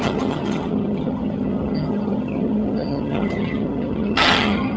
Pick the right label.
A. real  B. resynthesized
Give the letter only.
B